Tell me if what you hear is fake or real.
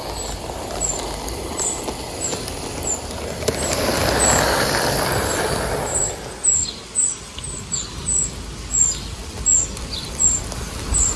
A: real